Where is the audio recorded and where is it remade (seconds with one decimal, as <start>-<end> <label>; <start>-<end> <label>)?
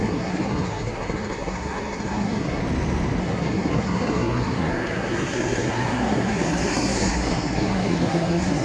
0.0-2.6 remade; 2.6-3.2 recorded; 3.2-8.6 remade